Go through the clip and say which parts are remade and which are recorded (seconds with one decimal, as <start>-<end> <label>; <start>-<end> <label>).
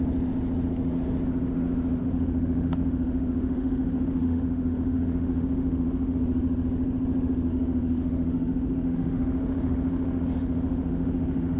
0.0-2.0 recorded; 2.0-6.2 remade; 6.2-7.5 recorded; 7.5-11.6 remade